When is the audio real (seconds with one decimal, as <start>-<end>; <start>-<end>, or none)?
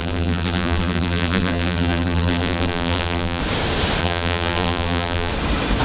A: 3.4-4.0; 5.3-5.8